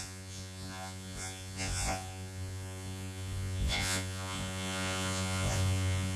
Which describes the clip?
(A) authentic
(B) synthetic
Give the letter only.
B